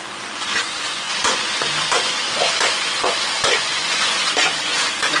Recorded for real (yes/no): no